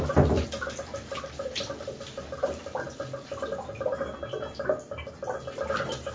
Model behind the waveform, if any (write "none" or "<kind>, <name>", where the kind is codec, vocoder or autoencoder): none